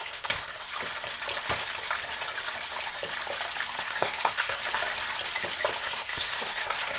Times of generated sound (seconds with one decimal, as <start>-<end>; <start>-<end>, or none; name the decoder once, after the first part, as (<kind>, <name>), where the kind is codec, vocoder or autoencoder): 0.0-0.7 (codec, SNAC); 3.8-4.6; 5.8-7.0